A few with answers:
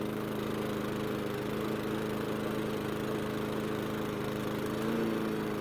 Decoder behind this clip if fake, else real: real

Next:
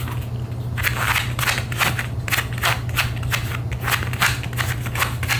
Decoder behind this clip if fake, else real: real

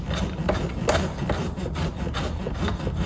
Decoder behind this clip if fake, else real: real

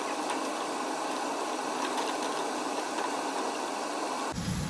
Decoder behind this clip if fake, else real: real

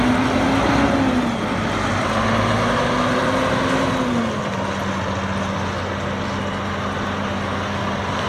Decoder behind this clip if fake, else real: real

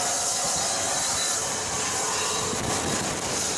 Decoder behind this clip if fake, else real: real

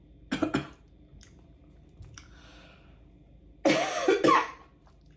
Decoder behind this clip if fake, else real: real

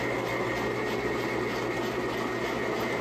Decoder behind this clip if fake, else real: real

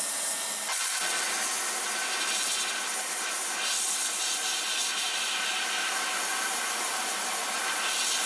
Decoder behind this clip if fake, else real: real